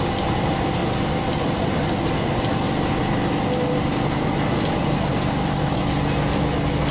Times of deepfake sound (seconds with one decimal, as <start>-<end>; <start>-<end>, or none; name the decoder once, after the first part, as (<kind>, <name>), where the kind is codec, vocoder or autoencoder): none